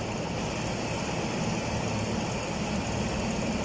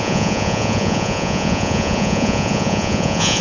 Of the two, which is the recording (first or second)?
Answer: first